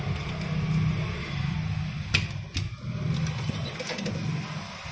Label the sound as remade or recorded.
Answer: recorded